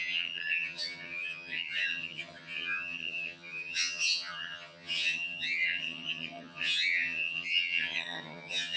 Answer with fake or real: fake